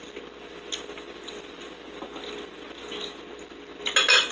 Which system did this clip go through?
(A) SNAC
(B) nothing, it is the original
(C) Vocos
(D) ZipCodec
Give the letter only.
B